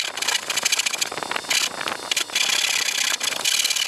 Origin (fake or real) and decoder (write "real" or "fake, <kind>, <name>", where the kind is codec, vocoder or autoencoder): real